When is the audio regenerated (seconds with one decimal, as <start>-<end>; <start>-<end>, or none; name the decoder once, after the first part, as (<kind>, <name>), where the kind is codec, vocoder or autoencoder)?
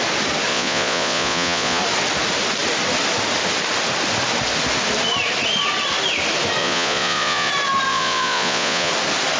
0.5-1.8 (vocoder, Vocos); 6.6-7.5; 7.9-8.9